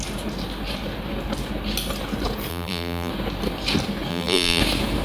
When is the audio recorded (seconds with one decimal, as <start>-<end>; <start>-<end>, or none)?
0.0-2.5; 3.1-4.1; 4.6-5.0